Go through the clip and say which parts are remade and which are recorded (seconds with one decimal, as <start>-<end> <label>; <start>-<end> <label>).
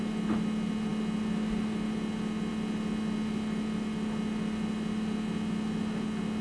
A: 0.0-6.4 recorded